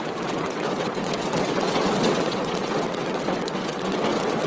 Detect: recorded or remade remade